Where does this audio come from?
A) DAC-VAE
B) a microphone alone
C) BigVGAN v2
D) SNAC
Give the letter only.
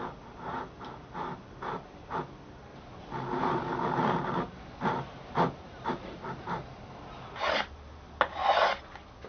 B